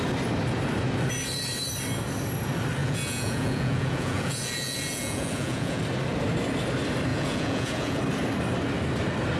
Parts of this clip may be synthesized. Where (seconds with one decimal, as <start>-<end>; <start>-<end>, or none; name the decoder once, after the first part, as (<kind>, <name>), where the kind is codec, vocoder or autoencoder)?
2.8-5.8 (vocoder, Vocos); 7.1-8.0